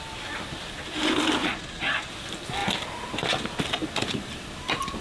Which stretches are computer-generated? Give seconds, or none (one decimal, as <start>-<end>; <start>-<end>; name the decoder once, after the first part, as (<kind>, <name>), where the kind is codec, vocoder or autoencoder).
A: 1.4-2.1 (vocoder, Vocos)

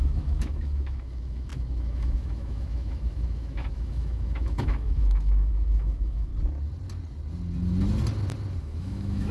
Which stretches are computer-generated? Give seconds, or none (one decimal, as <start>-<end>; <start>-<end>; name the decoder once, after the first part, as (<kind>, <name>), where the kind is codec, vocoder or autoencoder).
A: 0.0-6.3 (autoencoder, DAC-VAE); 8.6-9.3